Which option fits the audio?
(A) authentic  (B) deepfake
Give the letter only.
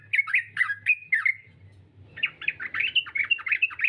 A